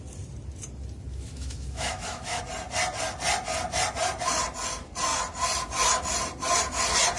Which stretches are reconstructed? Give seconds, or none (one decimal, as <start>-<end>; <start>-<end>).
1.1-2.4